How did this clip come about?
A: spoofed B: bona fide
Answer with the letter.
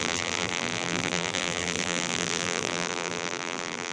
A